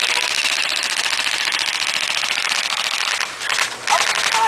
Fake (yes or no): no